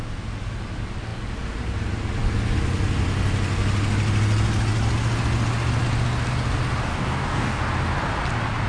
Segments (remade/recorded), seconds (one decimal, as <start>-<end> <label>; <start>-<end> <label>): 0.0-6.9 recorded; 6.9-7.6 remade; 7.6-8.7 recorded